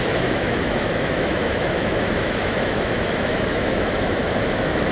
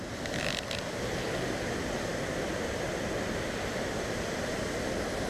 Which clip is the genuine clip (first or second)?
second